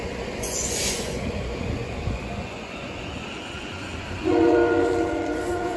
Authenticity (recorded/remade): remade